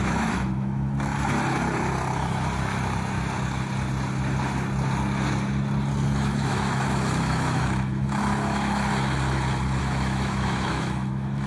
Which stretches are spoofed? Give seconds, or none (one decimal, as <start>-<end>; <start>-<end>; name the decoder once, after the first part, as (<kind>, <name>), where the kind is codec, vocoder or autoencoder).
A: 0.0-1.1 (autoencoder, DAC-VAE); 6.2-8.9; 9.8-11.5